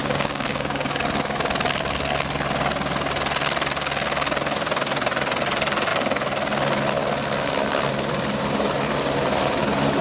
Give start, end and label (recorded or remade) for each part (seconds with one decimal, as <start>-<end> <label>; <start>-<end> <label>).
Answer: 0.0-1.0 remade; 1.0-10.0 recorded